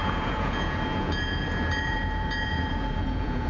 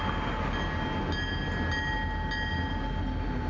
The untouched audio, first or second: second